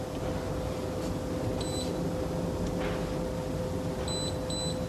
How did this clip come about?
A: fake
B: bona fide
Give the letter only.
B